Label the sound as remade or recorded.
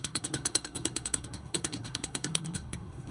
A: remade